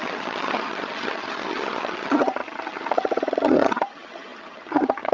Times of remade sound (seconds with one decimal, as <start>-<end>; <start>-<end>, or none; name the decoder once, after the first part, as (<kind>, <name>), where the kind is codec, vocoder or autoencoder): 0.0-5.1 (vocoder, HiFi-GAN)